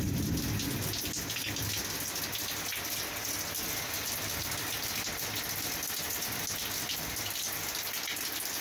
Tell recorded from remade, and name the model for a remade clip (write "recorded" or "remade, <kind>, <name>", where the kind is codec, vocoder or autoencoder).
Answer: recorded